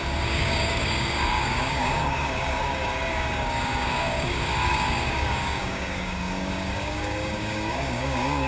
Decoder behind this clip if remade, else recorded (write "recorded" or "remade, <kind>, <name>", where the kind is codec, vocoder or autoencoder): remade, codec, DAC